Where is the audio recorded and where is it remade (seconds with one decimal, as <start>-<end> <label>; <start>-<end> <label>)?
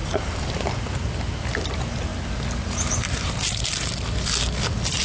0.0-1.1 remade; 1.1-5.0 recorded